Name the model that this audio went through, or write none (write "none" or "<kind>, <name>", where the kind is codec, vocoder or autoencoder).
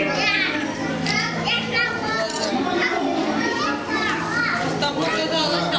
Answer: none